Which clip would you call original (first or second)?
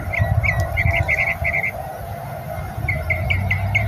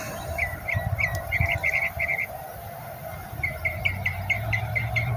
first